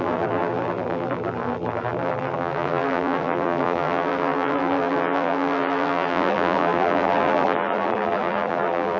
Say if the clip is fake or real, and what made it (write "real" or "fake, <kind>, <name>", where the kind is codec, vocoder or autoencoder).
fake, vocoder, BigVGAN v2